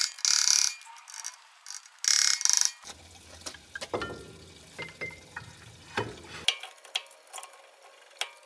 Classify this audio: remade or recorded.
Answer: recorded